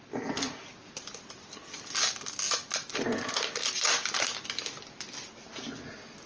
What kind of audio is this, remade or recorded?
recorded